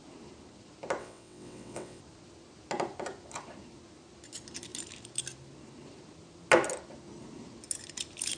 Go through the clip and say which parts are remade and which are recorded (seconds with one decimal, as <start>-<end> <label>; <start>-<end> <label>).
0.0-1.0 recorded; 1.0-2.0 remade; 2.0-8.4 recorded